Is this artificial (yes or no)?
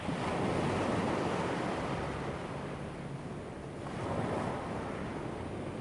no